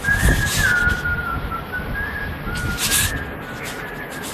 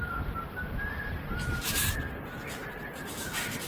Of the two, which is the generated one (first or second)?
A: second